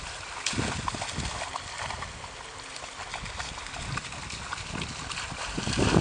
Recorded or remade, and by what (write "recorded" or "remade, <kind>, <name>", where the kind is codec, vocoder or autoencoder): recorded